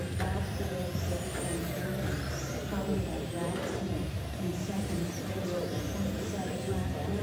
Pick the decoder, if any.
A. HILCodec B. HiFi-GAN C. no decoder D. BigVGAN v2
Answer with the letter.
D